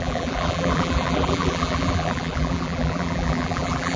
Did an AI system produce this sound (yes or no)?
yes